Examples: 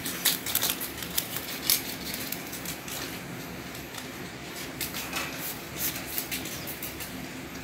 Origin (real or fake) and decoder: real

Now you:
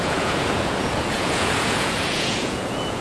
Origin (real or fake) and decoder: fake, vocoder, Vocos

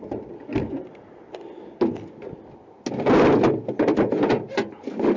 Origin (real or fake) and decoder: real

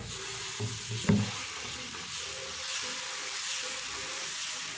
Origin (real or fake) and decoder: real